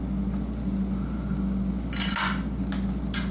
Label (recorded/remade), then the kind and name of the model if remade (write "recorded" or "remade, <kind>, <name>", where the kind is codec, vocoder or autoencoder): recorded